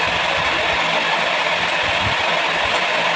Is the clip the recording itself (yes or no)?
yes